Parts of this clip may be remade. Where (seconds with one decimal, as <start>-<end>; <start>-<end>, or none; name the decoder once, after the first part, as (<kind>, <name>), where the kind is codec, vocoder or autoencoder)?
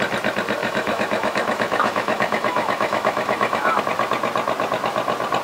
0.6-3.8 (autoencoder, DAC-VAE)